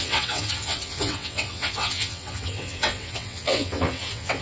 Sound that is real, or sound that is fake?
fake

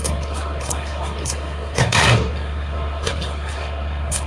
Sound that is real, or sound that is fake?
fake